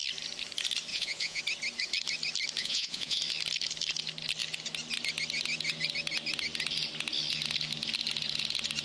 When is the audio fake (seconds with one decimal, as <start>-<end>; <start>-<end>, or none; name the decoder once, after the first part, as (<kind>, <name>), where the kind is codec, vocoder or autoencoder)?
0.9-1.4 (vocoder, Vocos); 2.6-3.2